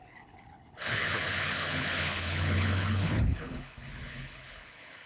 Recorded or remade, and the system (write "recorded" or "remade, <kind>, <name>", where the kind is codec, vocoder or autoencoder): remade, codec, HILCodec